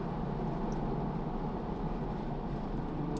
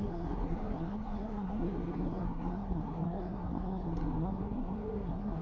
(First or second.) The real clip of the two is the first